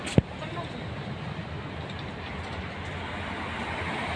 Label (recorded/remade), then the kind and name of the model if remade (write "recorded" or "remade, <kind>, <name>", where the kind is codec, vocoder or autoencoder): recorded